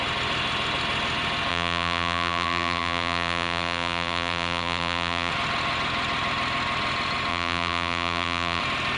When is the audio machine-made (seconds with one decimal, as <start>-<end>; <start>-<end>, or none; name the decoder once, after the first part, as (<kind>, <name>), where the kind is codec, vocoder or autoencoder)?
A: 1.5-5.3 (vocoder, BigVGAN v2); 7.3-8.6